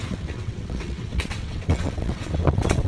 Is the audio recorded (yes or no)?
no